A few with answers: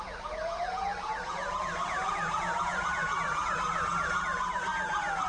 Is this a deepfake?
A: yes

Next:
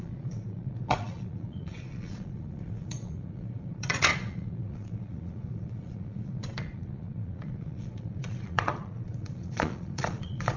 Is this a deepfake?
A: yes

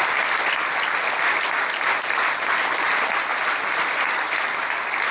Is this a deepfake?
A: no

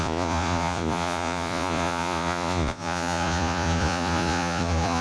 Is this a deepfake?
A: yes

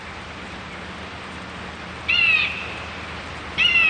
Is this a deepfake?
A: no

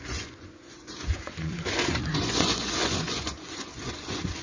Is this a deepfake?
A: yes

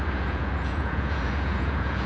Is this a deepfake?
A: yes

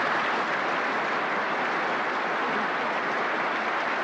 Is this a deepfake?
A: no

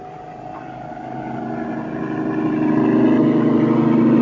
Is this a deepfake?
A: no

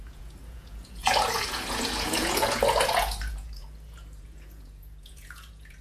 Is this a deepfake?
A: yes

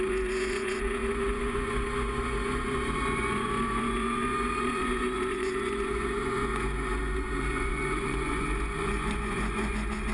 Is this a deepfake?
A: yes